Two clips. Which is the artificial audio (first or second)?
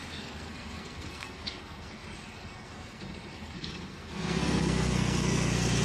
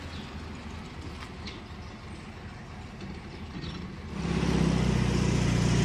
first